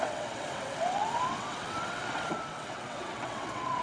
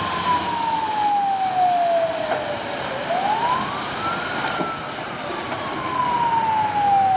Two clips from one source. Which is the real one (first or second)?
second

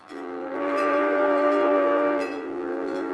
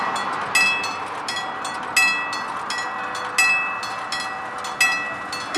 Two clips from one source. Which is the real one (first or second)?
second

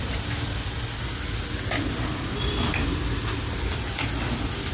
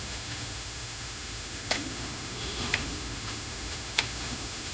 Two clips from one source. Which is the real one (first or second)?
first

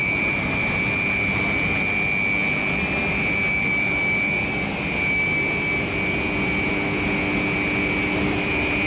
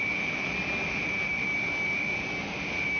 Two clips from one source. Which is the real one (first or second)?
first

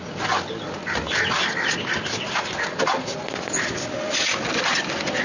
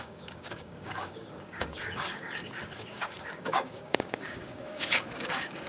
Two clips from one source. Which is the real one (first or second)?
first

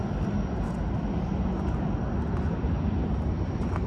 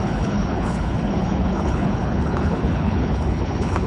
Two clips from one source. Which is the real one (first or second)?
first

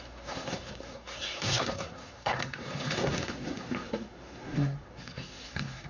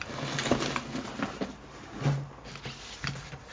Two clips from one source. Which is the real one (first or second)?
second